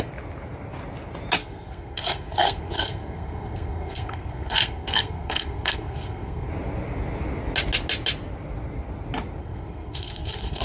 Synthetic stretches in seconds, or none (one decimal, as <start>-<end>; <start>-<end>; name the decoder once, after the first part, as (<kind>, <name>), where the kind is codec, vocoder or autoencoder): 1.4-6.5 (codec, SNAC); 9.4-10.6